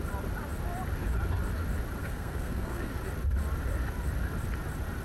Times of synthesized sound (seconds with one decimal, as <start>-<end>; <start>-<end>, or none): 2.0-2.9